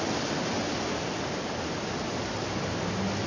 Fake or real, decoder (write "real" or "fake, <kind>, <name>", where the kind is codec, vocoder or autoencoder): real